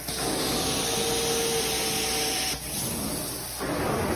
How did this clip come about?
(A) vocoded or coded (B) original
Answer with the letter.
B